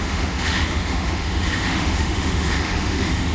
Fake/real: fake